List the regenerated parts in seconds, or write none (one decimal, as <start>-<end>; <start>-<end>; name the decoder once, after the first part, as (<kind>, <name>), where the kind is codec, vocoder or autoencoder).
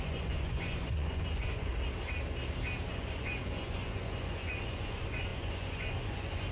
0.0-1.7 (vocoder, Vocos); 2.9-6.5